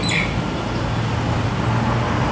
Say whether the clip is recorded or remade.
recorded